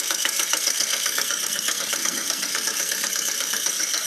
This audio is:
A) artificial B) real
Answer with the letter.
A